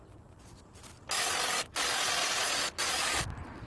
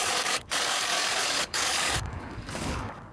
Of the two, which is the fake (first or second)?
second